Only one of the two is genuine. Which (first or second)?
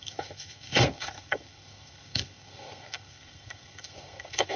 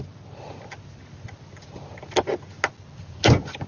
second